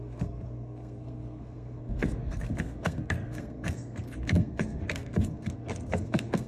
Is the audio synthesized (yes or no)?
yes